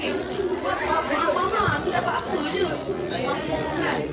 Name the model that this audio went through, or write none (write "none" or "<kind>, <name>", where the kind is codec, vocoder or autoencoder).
vocoder, Vocos